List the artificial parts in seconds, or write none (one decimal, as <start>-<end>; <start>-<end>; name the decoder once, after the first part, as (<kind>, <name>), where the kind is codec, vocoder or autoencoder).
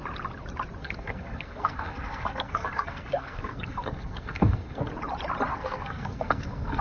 0.8-4.9 (codec, SNAC); 5.5-6.8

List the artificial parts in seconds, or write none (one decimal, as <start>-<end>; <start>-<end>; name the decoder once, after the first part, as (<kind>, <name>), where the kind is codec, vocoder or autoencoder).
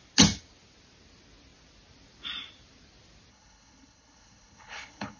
3.3-5.2 (codec, HILCodec)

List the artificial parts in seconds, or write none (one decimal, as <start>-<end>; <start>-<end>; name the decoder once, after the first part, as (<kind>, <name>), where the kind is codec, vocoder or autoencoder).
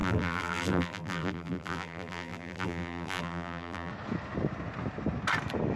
0.0-3.9 (vocoder, BigVGAN v2)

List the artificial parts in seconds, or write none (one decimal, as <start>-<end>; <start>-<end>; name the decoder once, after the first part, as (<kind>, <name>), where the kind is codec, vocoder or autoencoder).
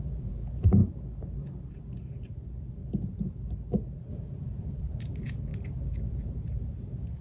0.0-0.8 (vocoder, BigVGAN v2); 4.1-5.5; 6.1-7.2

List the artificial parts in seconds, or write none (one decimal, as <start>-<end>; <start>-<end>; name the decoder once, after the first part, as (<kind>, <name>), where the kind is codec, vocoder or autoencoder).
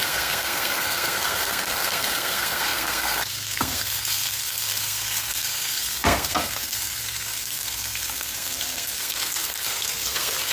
0.0-10.5 (codec, SNAC)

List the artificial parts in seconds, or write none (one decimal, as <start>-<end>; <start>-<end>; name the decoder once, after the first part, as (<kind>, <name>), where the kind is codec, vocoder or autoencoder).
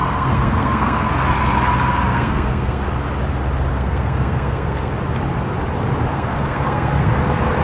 0.0-1.1 (codec, SNAC); 2.1-2.8; 3.7-4.9; 6.1-7.1